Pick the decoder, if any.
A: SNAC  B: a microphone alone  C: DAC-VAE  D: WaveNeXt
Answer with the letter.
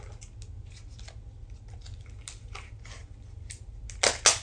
B